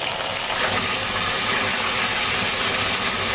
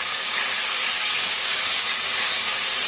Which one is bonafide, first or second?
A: first